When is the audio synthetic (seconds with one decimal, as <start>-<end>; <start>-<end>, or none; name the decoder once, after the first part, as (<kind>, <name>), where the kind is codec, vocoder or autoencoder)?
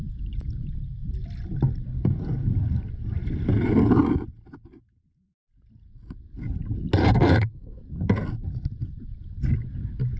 7.0-7.8 (codec, SNAC)